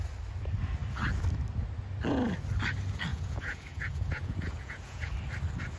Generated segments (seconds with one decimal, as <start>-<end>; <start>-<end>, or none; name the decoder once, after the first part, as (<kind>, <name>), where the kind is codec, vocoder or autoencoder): 3.1-5.1 (vocoder, Vocos)